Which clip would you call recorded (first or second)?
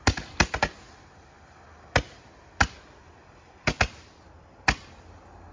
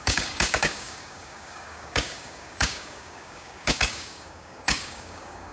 first